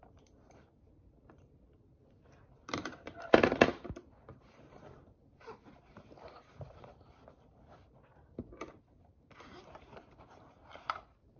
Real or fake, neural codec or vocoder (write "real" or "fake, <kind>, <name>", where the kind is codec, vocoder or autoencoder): fake, vocoder, BigVGAN v2